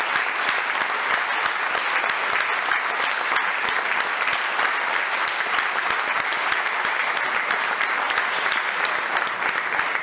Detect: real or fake real